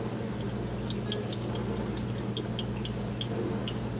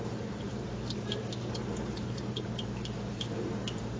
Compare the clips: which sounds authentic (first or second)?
first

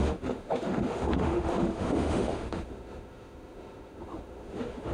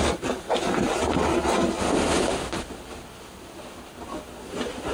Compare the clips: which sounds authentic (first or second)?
second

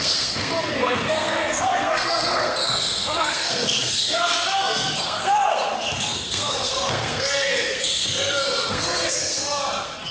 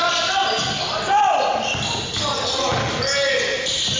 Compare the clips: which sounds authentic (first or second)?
second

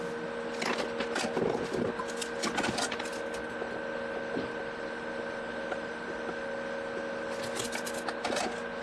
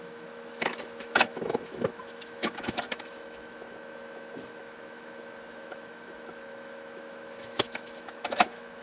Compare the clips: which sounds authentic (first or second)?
first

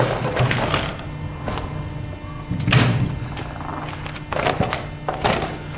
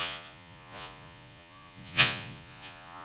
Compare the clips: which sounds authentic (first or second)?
first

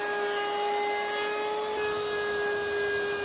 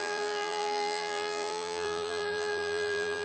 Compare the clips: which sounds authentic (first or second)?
first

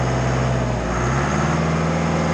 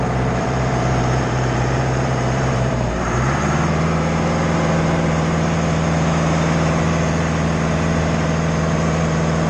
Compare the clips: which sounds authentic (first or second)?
first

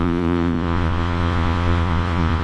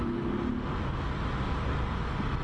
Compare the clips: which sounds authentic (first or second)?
second